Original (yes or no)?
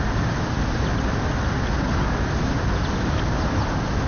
yes